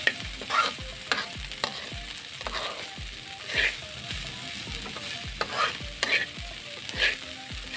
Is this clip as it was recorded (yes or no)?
yes